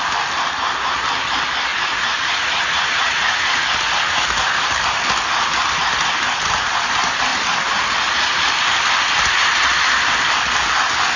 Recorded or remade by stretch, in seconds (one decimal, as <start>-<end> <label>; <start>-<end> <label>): 0.0-1.7 recorded; 1.7-3.6 remade; 3.6-11.2 recorded